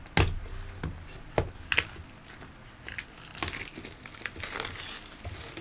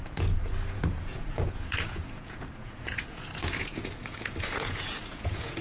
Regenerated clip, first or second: second